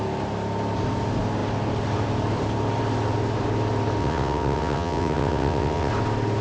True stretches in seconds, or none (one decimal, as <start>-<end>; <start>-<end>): 0.0-4.0; 5.9-6.4